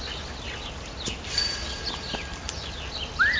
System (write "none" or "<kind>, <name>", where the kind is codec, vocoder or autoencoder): none